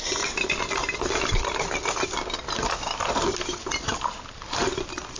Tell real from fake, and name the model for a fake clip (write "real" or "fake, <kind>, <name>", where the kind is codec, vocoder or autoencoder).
real